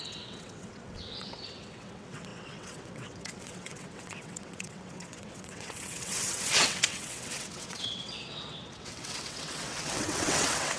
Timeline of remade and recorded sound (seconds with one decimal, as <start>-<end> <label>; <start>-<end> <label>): 0.0-10.8 remade